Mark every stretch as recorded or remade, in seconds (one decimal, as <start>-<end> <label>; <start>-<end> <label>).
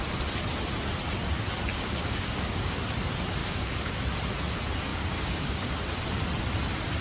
0.0-1.7 recorded; 1.7-2.8 remade; 2.8-3.4 recorded; 3.4-3.9 remade; 3.9-4.9 recorded; 4.9-5.7 remade; 5.7-7.0 recorded